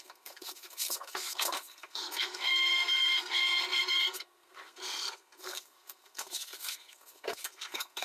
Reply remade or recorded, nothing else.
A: remade